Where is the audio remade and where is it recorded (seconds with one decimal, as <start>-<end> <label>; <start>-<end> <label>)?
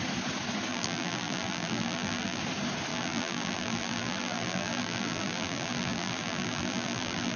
0.0-0.7 recorded; 0.7-2.4 remade; 2.4-2.9 recorded; 2.9-7.4 remade